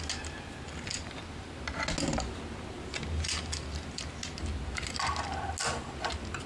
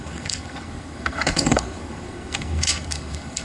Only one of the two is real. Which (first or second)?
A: first